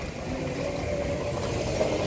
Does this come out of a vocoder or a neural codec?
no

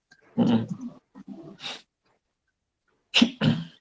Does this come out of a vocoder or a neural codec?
no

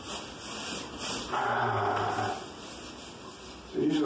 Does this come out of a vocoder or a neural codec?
no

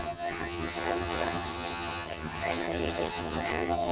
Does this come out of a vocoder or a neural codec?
yes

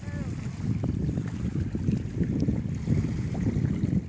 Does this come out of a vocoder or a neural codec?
no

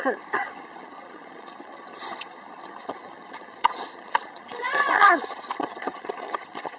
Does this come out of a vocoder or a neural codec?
yes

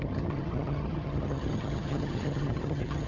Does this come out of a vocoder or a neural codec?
yes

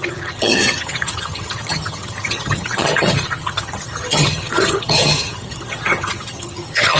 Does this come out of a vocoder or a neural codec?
yes